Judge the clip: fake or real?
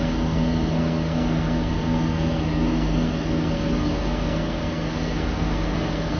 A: fake